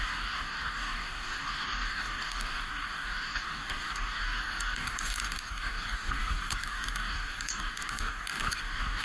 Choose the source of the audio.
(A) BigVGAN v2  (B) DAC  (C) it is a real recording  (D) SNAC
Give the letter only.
B